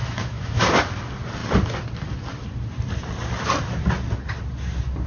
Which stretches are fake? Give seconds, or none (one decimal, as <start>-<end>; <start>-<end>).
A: 0.0-0.6